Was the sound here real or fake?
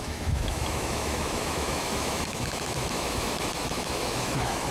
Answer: fake